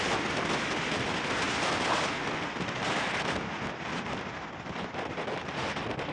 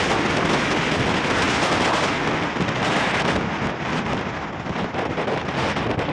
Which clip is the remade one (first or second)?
first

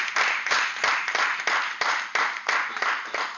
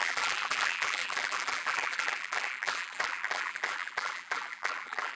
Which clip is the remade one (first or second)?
second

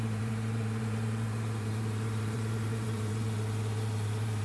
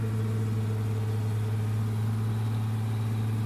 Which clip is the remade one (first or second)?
first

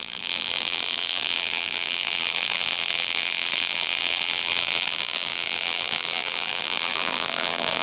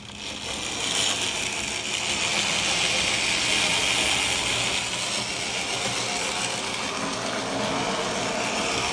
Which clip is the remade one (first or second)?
first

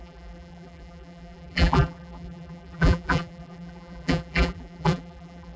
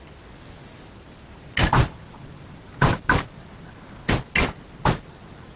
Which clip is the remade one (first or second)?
first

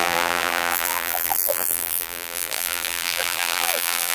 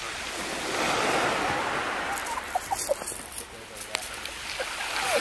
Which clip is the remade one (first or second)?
first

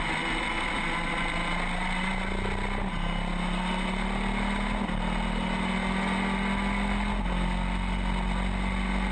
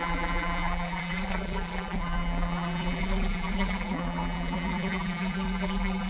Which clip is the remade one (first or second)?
second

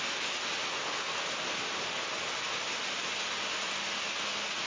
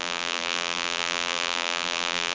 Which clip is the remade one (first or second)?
second